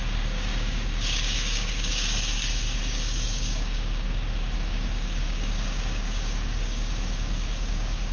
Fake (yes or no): yes